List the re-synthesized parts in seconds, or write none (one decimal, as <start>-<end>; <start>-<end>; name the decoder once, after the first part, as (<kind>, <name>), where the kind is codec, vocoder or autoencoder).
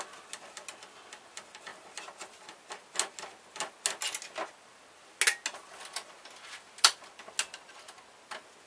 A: none